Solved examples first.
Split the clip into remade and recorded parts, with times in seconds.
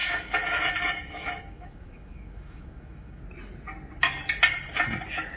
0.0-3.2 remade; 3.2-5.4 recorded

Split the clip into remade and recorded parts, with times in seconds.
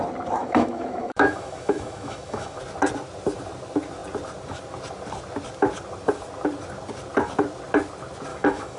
0.0-0.4 recorded; 0.4-2.6 remade; 2.6-8.3 recorded; 8.3-8.8 remade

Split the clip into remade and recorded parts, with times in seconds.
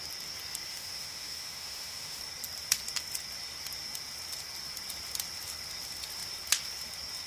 0.0-0.7 recorded; 0.7-2.2 remade; 2.2-7.3 recorded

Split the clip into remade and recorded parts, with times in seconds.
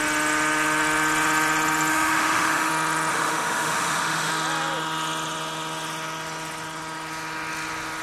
0.0-1.9 recorded; 1.9-2.7 remade; 2.7-3.1 recorded; 3.1-4.3 remade; 4.3-8.0 recorded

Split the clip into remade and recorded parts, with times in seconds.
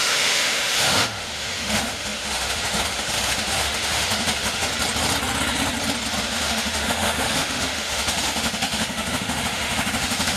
0.0-4.7 remade; 4.7-6.2 recorded; 6.2-10.4 remade